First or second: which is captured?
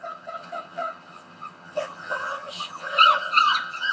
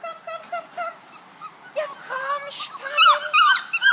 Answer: second